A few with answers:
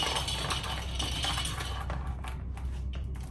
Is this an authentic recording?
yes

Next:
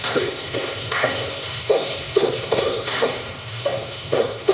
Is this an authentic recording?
no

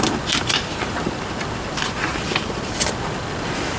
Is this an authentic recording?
yes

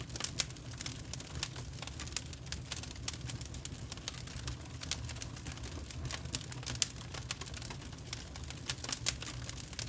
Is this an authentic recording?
yes